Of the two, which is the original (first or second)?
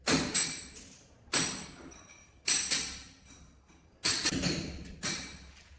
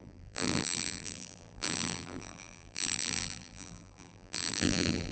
first